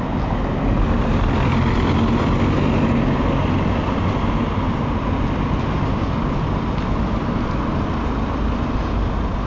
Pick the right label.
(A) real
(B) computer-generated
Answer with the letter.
A